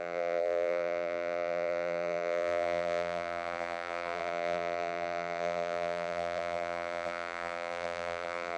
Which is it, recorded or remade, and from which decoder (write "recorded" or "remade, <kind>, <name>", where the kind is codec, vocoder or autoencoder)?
remade, vocoder, BigVGAN v2